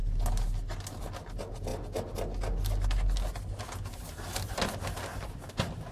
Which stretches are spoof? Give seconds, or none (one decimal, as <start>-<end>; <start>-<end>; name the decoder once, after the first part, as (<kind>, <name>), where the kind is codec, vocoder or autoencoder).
none